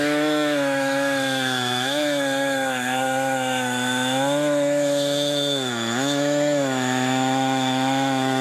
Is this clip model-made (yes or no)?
yes